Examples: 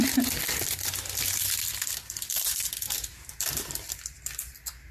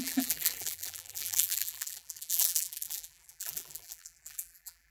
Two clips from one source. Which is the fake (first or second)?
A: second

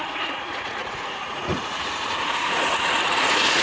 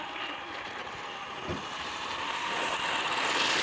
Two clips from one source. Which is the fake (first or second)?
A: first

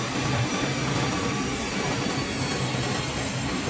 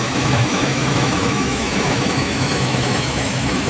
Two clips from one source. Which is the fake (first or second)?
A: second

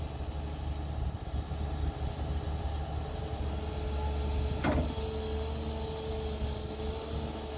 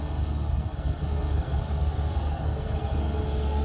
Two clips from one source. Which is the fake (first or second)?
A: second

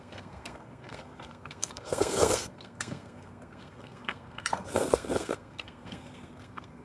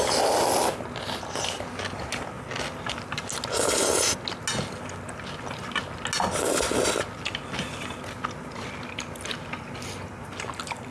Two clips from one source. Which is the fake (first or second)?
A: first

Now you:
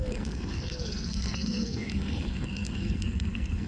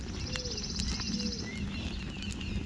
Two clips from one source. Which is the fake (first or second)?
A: first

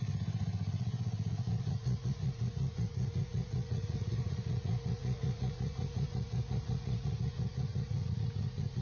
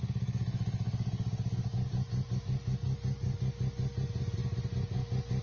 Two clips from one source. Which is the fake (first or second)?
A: first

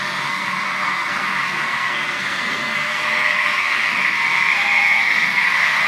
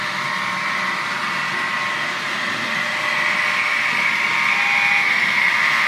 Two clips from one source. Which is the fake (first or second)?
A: first